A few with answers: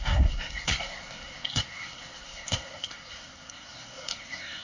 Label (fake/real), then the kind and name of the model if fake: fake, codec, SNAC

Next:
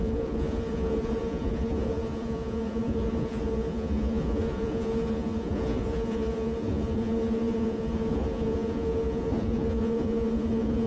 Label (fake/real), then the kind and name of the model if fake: fake, vocoder, Vocos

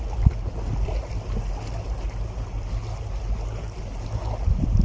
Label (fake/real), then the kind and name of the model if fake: real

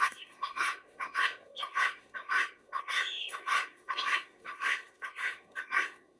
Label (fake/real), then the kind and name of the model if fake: fake, codec, SNAC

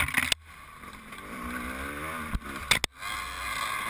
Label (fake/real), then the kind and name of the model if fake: real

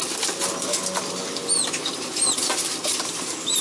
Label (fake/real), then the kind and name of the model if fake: real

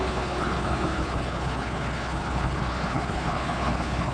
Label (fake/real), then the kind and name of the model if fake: fake, codec, HILCodec